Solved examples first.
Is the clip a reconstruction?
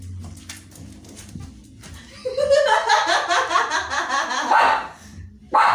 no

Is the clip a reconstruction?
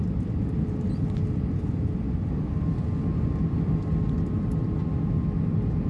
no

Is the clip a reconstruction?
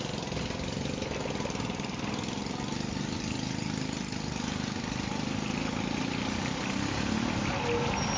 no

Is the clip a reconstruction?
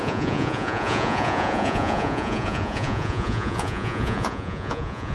yes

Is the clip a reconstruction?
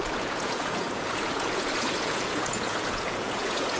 yes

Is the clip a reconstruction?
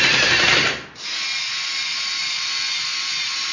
no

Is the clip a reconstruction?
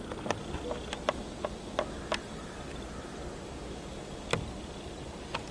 no